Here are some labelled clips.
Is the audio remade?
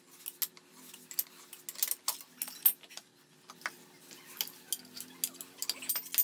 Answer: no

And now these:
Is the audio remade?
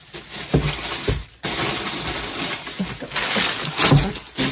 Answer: no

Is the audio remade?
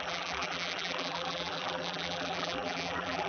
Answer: yes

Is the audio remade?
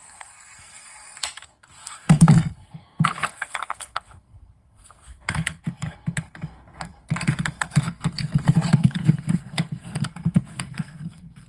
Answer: yes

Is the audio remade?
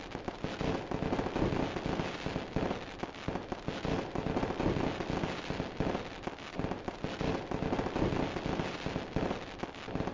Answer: no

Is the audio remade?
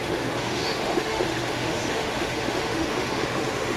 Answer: yes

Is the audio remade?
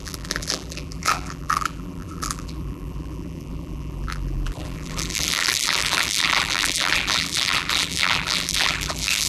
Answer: yes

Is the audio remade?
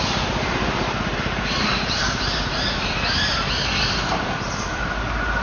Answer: yes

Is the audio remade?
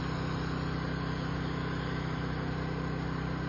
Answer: no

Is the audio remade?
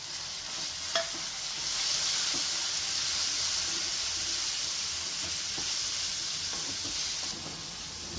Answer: no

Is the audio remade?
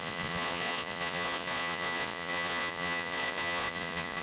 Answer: yes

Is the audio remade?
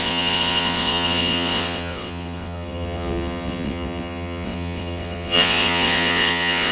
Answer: yes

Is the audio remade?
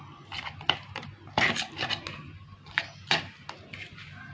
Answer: no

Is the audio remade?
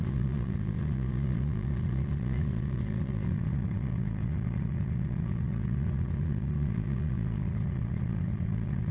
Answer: yes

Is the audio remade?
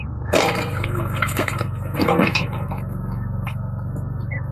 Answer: yes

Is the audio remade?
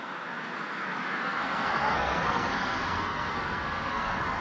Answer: yes